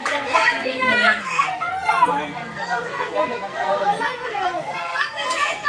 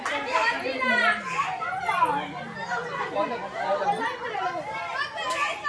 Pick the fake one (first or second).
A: first